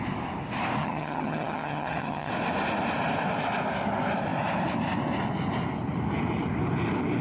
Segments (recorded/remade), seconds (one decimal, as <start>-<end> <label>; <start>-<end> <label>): 0.0-0.8 recorded; 0.8-2.3 remade; 2.3-7.2 recorded